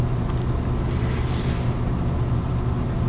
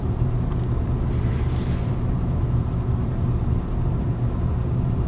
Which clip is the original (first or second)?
first